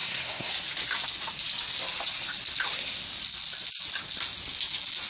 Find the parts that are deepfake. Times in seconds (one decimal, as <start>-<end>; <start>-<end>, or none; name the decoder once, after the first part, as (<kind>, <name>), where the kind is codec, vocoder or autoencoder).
0.0-0.5 (codec, SNAC)

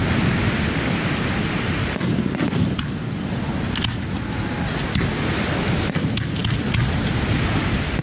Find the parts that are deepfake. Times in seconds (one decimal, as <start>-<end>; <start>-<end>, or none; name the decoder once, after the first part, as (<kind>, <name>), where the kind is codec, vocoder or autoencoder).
none

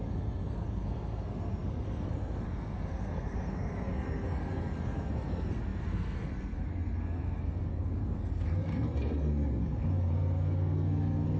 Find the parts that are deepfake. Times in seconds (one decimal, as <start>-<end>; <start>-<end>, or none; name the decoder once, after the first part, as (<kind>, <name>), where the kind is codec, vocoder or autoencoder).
0.0-11.4 (codec, SNAC)

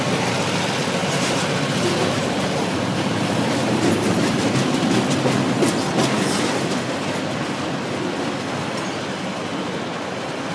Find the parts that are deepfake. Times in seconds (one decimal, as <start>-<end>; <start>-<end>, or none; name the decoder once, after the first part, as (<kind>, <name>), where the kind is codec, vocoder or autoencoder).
1.0-4.6 (vocoder, BigVGAN v2)

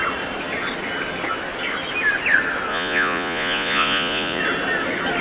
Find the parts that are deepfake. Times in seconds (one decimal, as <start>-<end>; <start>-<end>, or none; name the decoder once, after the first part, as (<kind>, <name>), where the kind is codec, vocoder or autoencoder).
2.7-4.4 (vocoder, Vocos)

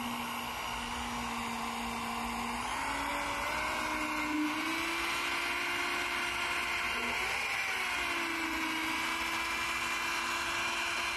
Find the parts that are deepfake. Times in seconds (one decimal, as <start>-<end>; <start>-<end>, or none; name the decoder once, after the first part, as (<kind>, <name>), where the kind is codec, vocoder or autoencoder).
none

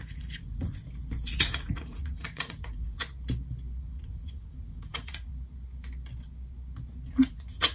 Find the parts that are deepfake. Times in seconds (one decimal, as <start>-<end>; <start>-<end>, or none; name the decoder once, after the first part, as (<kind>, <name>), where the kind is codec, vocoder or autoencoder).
0.0-0.8 (vocoder, Vocos); 1.3-3.0; 3.8-5.3; 7.1-7.7